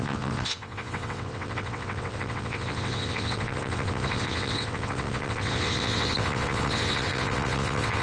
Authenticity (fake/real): fake